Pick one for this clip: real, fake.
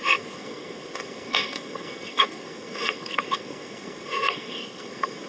fake